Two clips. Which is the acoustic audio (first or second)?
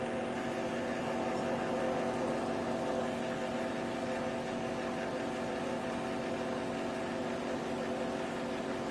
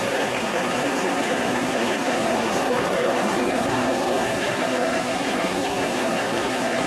first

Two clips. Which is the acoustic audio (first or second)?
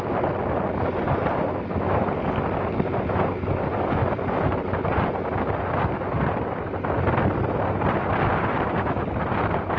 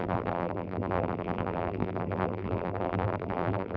first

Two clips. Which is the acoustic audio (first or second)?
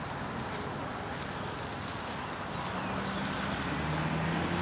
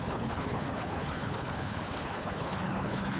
first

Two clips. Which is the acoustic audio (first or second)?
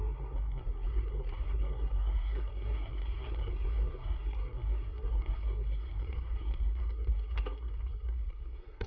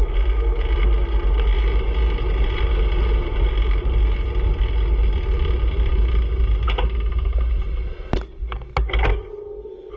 second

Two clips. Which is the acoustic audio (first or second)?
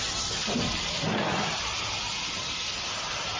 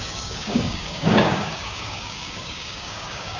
first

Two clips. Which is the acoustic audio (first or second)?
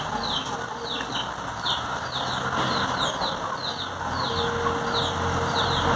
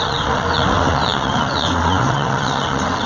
first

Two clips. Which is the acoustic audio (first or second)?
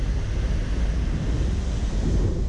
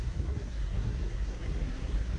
first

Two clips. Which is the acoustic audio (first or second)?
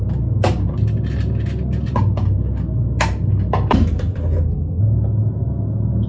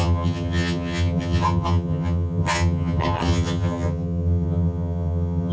first